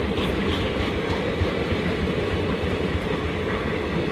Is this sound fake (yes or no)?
no